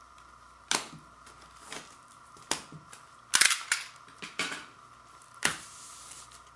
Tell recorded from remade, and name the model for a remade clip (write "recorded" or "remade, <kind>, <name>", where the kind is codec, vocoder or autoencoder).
recorded